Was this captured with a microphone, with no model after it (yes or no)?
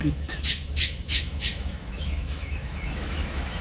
no